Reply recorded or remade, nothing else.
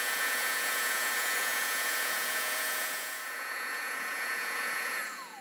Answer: remade